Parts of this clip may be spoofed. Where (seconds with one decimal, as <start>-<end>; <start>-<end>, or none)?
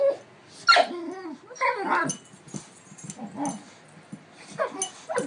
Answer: none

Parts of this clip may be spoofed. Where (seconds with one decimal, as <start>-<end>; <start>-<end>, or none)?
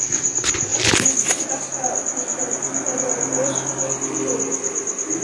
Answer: none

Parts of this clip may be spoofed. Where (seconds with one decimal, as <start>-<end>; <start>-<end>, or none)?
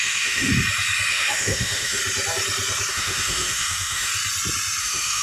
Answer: 0.0-0.5; 1.1-2.0; 2.9-4.1; 4.8-5.2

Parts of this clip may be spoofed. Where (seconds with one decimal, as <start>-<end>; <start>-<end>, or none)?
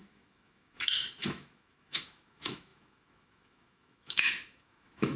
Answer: 0.0-5.2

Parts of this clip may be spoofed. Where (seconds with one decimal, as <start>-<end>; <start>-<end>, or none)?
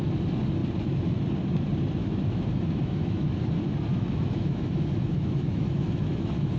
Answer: 2.0-3.3; 3.9-6.6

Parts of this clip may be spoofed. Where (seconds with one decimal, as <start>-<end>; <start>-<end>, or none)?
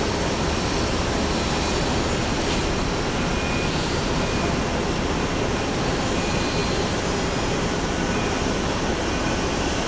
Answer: none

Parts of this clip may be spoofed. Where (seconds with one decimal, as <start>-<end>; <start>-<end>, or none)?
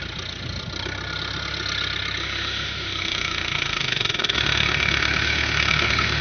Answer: 2.2-6.2